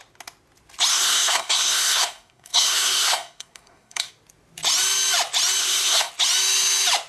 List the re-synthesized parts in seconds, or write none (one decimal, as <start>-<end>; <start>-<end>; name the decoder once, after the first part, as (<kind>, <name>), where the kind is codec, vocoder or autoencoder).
0.9-4.1 (codec, SNAC); 5.6-6.1